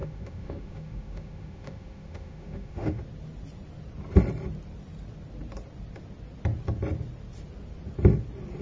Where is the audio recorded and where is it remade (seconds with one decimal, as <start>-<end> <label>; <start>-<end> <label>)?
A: 0.0-3.0 remade; 3.0-8.6 recorded